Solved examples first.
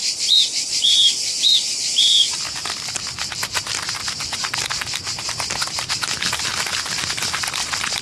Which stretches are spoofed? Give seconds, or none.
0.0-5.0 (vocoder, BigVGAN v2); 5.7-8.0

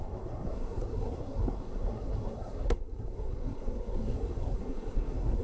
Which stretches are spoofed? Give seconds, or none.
0.0-5.4 (codec, SNAC)

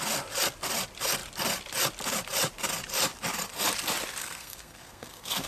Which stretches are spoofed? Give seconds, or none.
4.2-5.5 (codec, SNAC)

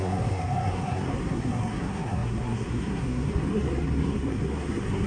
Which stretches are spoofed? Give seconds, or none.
0.0-5.1 (codec, SNAC)

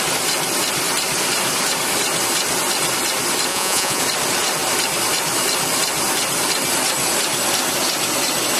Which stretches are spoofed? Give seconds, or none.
3.5-4.0 (vocoder, Vocos)

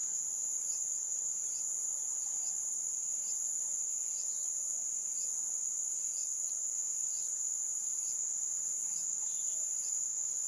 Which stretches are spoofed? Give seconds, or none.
0.0-2.5 (vocoder, BigVGAN v2)

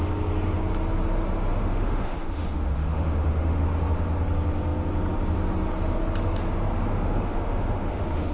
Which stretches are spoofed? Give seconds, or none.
1.5-3.6 (autoencoder, DAC-VAE); 6.9-8.3

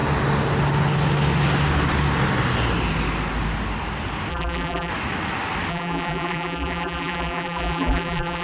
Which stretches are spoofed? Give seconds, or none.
4.3-4.9 (vocoder, BigVGAN v2); 5.7-8.4